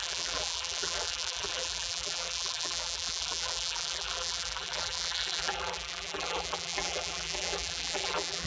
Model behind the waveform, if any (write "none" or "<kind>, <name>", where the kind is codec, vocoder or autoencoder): vocoder, BigVGAN v2